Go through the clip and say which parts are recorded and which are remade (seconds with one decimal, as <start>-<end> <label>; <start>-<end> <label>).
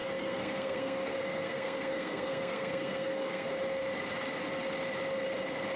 0.0-3.5 remade; 3.5-5.8 recorded